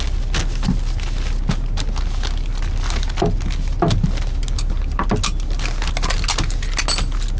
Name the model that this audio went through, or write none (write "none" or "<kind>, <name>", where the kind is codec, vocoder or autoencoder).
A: none